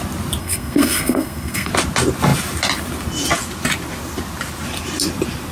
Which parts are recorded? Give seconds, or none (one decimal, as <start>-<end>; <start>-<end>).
0.0-0.4; 1.7-5.5